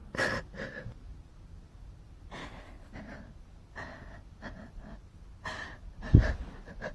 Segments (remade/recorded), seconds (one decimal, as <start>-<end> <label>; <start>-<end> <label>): 0.0-2.4 recorded; 2.4-2.9 remade; 2.9-6.9 recorded